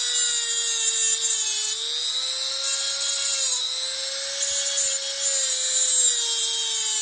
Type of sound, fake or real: real